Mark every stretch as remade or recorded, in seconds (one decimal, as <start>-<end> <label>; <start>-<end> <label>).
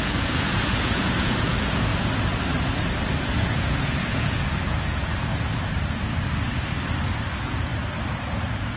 0.0-1.9 remade; 1.9-3.2 recorded; 3.2-5.3 remade; 5.3-7.3 recorded; 7.3-7.7 remade; 7.7-8.8 recorded